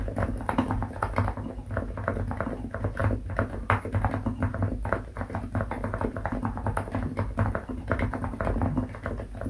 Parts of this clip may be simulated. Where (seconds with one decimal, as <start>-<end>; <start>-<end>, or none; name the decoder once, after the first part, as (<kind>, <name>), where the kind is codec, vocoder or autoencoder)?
none